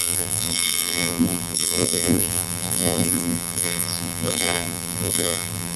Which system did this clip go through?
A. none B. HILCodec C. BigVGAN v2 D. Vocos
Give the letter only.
C